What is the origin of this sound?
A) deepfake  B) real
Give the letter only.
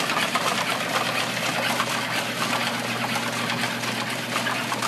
A